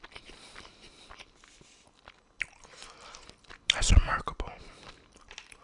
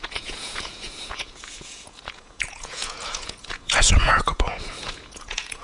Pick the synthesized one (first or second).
second